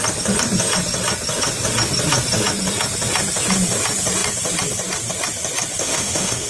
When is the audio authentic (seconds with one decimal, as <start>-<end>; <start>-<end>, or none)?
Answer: 0.0-5.8